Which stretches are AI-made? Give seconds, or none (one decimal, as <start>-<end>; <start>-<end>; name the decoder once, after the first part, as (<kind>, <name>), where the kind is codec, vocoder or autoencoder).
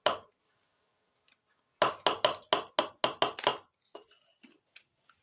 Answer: none